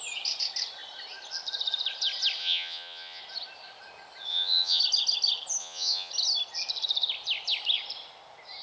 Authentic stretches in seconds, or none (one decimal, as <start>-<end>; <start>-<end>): 0.0-2.4; 3.2-4.3; 4.8-5.6; 6.1-8.6